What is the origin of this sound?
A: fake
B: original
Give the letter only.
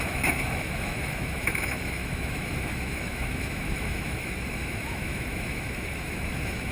A